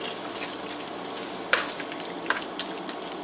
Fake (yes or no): no